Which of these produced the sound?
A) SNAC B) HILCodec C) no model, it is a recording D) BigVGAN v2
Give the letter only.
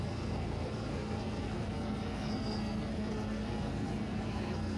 A